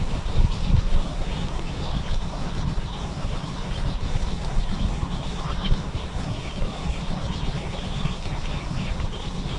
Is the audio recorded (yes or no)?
no